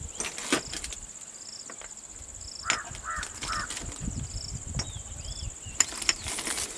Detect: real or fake real